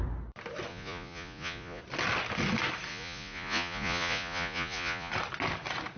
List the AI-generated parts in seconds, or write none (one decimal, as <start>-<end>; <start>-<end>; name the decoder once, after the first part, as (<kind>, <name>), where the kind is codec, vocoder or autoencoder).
0.7-1.8 (vocoder, Vocos); 2.9-5.1